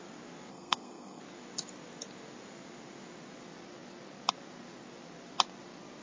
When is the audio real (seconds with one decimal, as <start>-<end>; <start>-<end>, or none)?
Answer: 0.0-0.5; 1.2-6.0